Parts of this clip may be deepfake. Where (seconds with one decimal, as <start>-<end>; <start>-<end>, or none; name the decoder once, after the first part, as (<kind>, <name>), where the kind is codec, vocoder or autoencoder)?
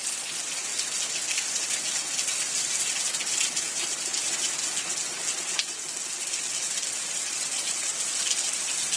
none